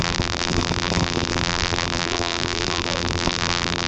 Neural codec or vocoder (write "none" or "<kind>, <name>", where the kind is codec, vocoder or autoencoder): vocoder, BigVGAN v2